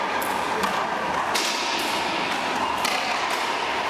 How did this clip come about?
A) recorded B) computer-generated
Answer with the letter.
A